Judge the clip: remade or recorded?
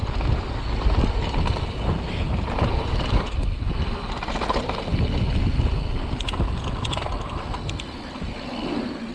recorded